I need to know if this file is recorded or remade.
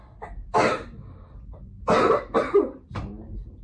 recorded